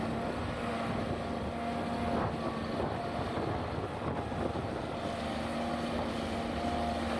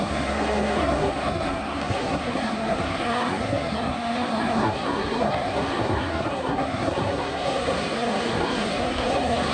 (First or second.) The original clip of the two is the first